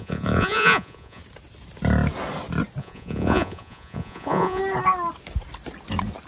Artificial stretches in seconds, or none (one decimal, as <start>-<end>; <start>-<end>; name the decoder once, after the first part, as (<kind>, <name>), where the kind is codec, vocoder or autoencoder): 0.0-1.2 (vocoder, Vocos); 2.8-4.6